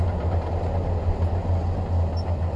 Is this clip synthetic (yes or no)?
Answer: no